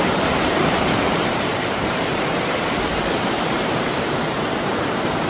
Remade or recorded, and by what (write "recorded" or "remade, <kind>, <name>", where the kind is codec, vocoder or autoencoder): remade, vocoder, BigVGAN v2